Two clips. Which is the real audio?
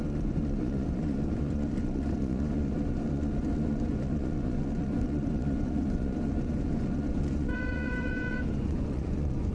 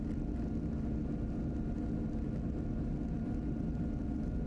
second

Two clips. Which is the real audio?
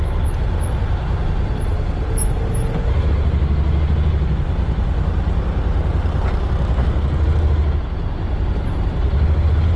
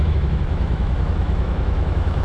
first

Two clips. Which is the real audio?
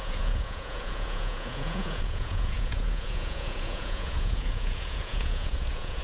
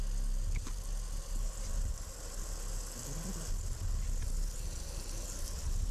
second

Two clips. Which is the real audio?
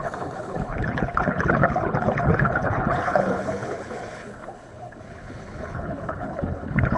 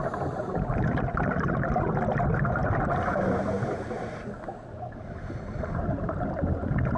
second